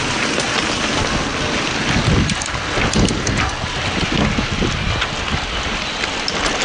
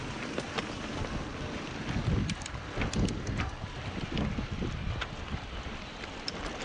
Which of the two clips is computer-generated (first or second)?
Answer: second